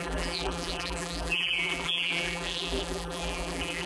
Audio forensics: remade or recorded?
remade